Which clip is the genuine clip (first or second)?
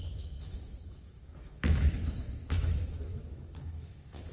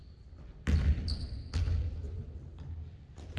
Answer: second